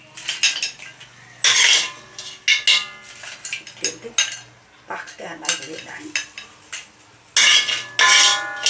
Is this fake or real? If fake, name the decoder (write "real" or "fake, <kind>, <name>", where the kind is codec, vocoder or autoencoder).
real